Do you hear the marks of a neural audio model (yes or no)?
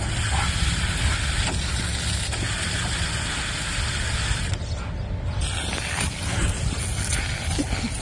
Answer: no